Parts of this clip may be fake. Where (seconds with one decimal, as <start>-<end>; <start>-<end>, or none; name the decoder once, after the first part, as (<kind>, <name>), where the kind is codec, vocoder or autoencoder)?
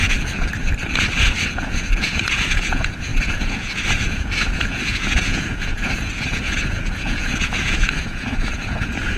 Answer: 0.0-0.5 (vocoder, Vocos); 1.4-9.2